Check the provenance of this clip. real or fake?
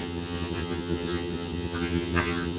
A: fake